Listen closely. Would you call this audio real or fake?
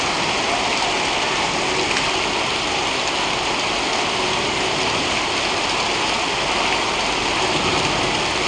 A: real